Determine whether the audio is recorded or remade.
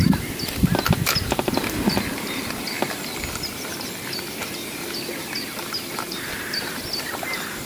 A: recorded